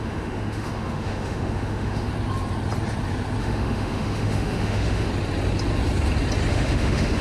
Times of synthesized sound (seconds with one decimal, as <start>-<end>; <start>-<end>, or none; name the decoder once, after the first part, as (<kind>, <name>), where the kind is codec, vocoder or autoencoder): 0.0-2.1 (autoencoder, DAC-VAE); 3.4-5.1; 6.5-7.2